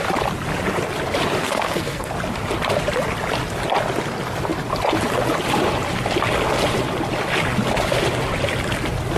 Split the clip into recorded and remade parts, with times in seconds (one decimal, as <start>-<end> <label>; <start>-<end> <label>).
0.0-1.4 recorded; 1.4-2.1 remade; 2.1-9.2 recorded